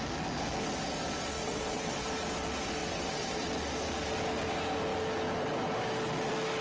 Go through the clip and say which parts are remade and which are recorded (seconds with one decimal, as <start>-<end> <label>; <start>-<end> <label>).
0.0-1.4 recorded; 1.4-1.9 remade; 1.9-2.8 recorded; 2.8-3.5 remade; 3.5-6.6 recorded